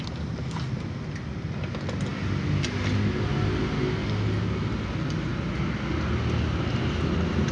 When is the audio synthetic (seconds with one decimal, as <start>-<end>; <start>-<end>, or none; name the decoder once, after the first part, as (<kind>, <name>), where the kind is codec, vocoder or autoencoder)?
none